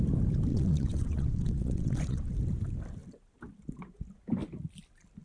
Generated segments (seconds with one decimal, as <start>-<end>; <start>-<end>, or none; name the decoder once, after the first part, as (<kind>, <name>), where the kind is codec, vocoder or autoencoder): 0.5-2.2 (vocoder, WaveNeXt)